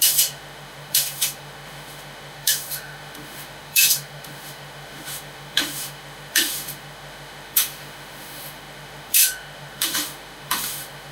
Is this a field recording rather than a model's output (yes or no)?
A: no